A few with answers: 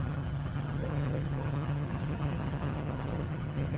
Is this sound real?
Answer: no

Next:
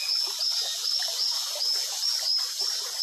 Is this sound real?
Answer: yes